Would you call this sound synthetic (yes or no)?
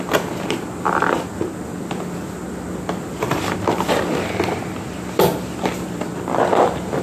yes